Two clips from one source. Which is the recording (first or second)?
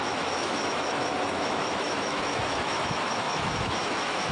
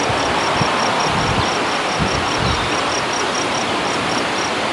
second